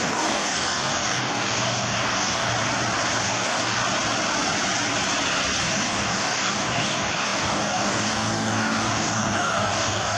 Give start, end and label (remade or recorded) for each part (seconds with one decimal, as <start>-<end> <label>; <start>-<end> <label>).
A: 0.0-2.5 remade; 2.5-3.2 recorded; 3.2-3.8 remade; 3.8-5.6 recorded; 5.6-10.2 remade